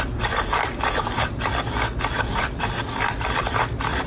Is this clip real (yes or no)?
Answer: no